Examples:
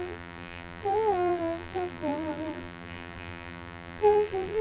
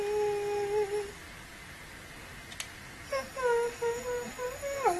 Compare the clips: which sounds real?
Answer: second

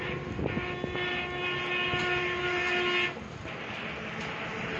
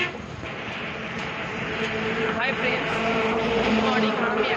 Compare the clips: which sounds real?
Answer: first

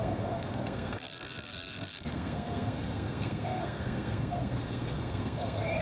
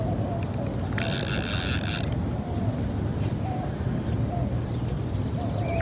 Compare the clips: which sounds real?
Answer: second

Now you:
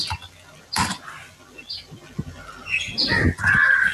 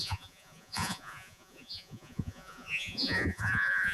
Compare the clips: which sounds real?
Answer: first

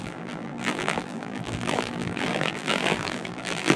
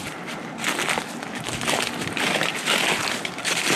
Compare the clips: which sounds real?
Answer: second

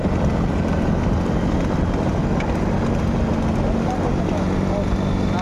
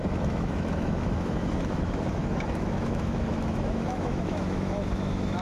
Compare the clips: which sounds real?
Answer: first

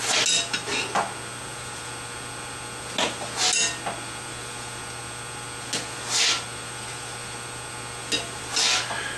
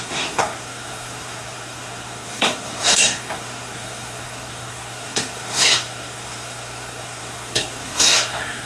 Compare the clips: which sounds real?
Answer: first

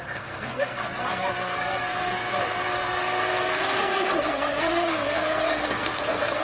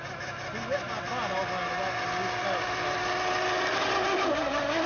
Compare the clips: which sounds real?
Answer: second